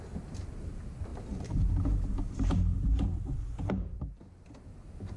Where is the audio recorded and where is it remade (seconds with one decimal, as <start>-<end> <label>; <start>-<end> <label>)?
0.0-1.1 recorded; 1.1-4.2 remade; 4.2-5.2 recorded